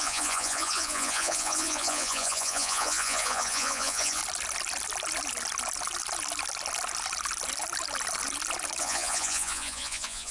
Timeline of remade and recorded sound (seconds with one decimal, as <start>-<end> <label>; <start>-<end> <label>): 0.0-4.2 remade; 4.2-8.8 recorded; 8.8-10.3 remade